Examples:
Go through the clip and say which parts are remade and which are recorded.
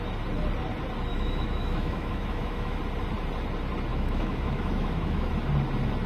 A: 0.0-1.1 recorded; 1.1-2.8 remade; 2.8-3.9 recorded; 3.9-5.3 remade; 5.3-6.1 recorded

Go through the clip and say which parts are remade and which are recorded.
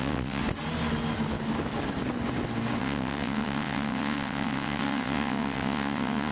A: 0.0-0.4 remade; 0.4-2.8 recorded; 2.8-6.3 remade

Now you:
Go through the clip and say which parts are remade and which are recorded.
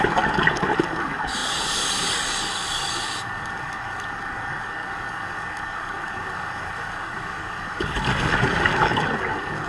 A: 0.0-9.7 remade